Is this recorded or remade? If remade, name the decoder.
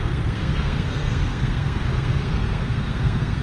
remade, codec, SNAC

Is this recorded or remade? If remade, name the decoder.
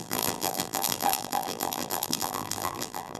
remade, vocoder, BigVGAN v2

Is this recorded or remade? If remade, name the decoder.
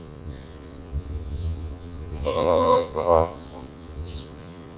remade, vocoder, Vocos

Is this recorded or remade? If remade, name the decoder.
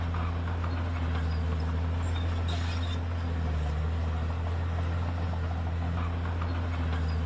recorded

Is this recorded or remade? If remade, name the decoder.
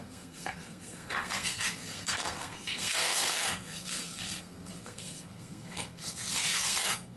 remade, codec, SNAC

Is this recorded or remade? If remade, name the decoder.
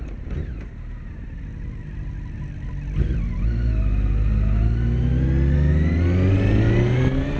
recorded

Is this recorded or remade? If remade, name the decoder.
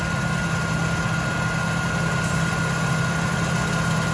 recorded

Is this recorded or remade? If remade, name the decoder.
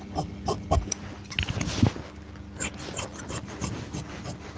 recorded